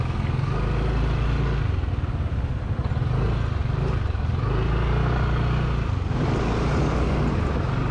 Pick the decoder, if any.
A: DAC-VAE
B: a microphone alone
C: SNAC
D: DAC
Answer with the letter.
B